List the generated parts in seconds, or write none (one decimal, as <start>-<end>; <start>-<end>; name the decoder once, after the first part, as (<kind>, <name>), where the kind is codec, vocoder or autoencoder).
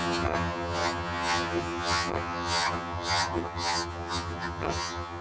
0.0-5.2 (vocoder, HiFi-GAN)